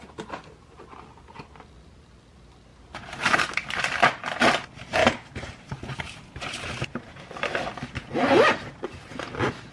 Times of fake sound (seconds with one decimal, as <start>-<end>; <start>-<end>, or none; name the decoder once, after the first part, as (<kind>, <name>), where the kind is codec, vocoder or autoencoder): 2.7-3.5 (vocoder, BigVGAN v2); 5.0-7.1; 8.1-8.8